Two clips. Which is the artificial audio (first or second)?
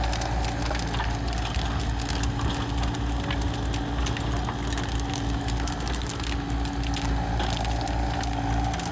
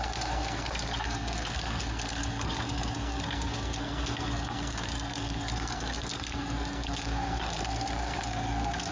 second